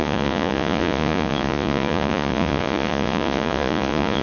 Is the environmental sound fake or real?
fake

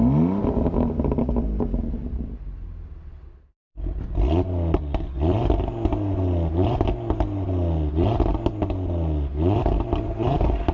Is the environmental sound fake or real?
real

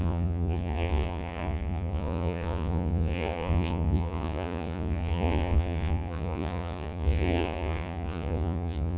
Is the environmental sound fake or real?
fake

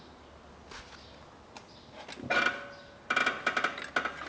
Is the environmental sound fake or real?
real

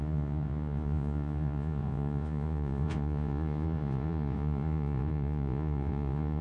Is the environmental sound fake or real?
fake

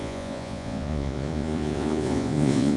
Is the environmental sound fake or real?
fake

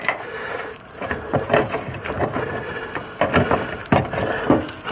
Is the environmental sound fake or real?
real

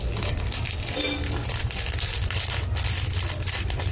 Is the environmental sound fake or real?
real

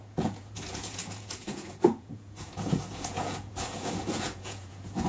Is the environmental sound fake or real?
fake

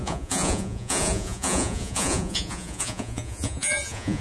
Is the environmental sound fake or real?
fake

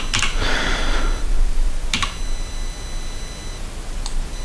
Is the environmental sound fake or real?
real